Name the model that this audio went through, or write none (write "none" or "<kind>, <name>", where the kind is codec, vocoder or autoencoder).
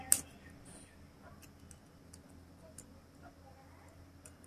none